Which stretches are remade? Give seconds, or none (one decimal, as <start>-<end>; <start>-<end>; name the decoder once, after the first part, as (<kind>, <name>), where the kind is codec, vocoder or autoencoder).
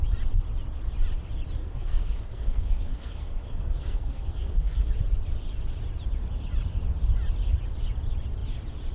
1.6-4.9 (codec, SNAC)